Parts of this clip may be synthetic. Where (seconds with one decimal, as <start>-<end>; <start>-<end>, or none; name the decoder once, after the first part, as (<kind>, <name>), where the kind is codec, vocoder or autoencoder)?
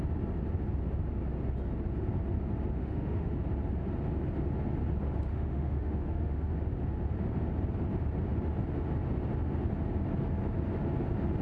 2.8-3.3 (autoencoder, DAC-VAE); 5.3-6.5